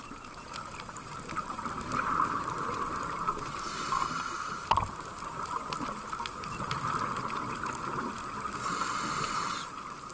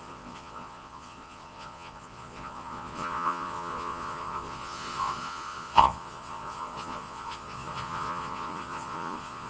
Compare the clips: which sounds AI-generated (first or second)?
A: second